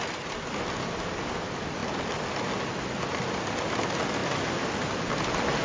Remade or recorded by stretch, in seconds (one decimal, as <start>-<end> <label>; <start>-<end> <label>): 0.0-5.6 recorded

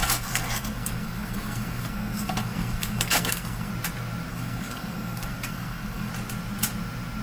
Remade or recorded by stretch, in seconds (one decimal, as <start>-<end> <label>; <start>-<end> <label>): 0.0-3.7 remade; 3.7-4.3 recorded; 4.3-6.1 remade; 6.1-7.2 recorded

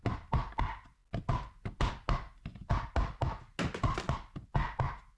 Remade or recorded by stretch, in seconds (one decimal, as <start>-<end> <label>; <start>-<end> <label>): 0.0-5.2 recorded

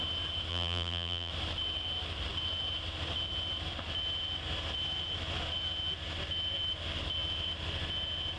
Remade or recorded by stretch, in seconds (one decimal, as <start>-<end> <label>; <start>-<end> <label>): 0.0-0.5 recorded; 0.5-1.3 remade; 1.3-8.4 recorded

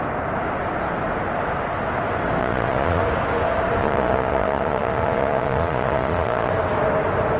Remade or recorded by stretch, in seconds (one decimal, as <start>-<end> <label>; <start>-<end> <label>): 0.0-2.4 recorded; 2.4-3.0 remade; 3.0-3.8 recorded; 3.8-6.5 remade; 6.5-7.4 recorded

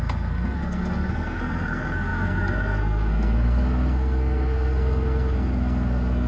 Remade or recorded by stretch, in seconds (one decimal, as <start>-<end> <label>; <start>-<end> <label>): 0.0-6.3 remade

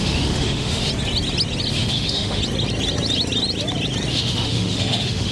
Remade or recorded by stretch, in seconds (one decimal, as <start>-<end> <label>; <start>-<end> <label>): 0.0-0.9 remade; 0.9-1.7 recorded; 1.7-2.4 remade; 2.4-4.1 recorded; 4.1-5.3 remade